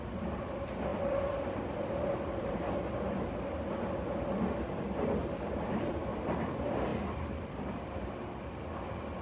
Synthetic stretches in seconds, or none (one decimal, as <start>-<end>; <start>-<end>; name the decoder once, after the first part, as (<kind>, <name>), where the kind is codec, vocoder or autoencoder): 0.9-2.5 (vocoder, BigVGAN v2); 5.2-6.5; 6.9-7.6

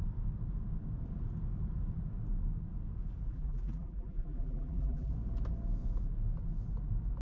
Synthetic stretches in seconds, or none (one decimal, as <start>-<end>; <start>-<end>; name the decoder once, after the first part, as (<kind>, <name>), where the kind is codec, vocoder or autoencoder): 3.3-5.1 (vocoder, BigVGAN v2)